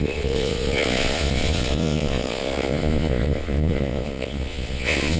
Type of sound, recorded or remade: remade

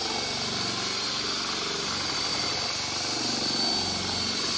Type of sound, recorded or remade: recorded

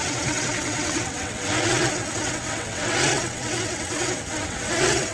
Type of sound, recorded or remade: remade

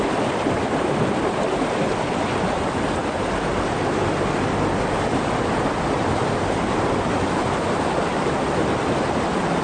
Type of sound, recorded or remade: recorded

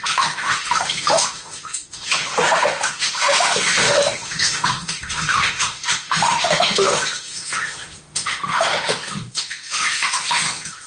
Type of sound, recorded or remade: remade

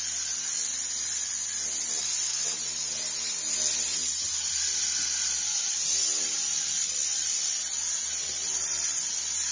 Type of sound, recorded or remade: recorded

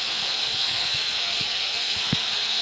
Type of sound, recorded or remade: remade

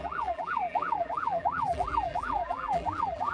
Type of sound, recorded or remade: remade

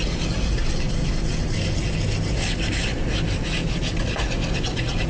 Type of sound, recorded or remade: recorded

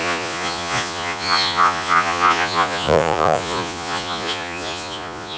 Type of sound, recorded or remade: remade